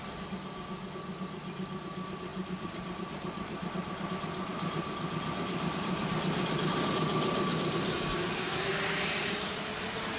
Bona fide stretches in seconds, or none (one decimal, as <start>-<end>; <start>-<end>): 0.0-2.3; 4.1-10.2